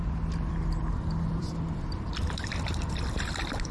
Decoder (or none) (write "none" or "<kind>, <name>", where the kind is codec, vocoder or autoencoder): vocoder, BigVGAN v2